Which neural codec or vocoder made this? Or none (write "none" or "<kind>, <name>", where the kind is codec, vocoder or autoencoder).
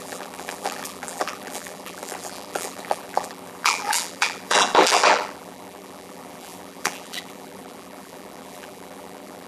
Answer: vocoder, BigVGAN v2